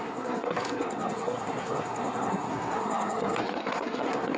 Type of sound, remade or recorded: remade